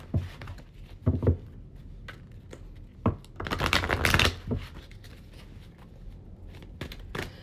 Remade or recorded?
recorded